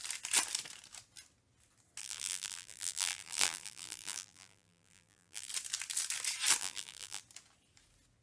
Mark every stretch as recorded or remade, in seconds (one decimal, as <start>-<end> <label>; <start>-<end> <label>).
0.0-2.0 recorded; 2.0-5.5 remade; 5.5-6.6 recorded; 6.6-7.2 remade; 7.2-8.2 recorded